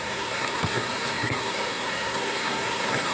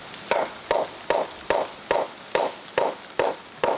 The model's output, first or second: first